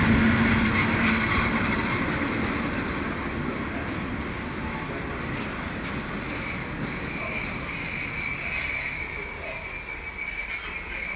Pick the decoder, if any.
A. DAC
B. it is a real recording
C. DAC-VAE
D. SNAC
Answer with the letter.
B